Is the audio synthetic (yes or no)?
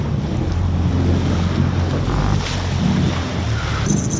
no